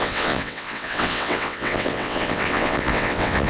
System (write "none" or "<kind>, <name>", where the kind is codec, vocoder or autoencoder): vocoder, WaveNeXt